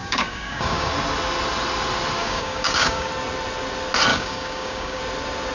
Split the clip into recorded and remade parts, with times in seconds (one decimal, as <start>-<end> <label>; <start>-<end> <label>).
0.0-0.9 remade; 0.9-2.2 recorded; 2.2-3.1 remade; 3.1-4.1 recorded; 4.1-5.0 remade; 5.0-5.5 recorded